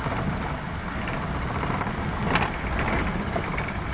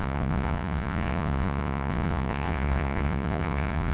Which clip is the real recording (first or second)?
first